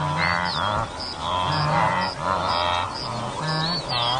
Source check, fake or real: real